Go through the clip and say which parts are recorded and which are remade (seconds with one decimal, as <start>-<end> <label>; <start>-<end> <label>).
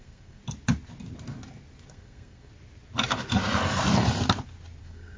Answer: 0.0-0.4 remade; 0.4-1.9 recorded; 1.9-2.5 remade; 2.5-4.8 recorded; 4.8-5.2 remade